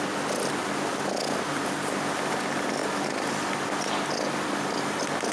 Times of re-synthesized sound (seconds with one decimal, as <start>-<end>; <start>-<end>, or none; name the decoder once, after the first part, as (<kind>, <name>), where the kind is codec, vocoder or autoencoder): none